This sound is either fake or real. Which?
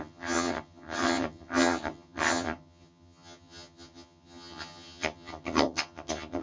fake